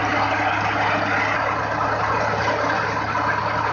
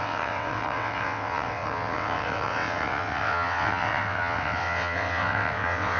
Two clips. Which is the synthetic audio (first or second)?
second